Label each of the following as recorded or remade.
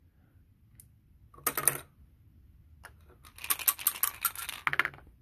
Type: recorded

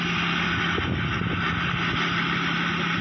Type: recorded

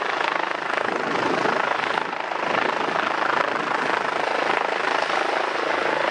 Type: recorded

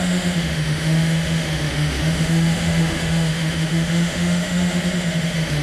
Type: remade